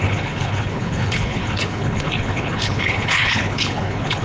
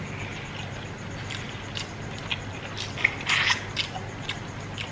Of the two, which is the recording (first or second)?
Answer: second